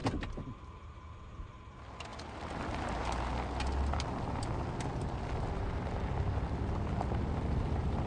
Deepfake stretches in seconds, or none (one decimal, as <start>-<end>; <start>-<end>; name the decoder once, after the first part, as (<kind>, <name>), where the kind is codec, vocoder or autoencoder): none